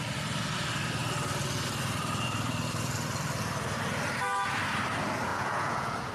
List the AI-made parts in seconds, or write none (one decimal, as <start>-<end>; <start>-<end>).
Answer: 5.3-6.1